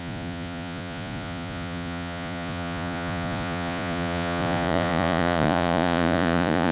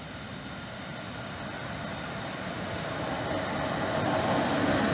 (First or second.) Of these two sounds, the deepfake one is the first